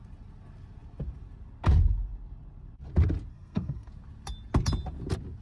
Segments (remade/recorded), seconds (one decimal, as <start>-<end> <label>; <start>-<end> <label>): 0.0-3.3 recorded; 3.3-3.9 remade; 3.9-5.4 recorded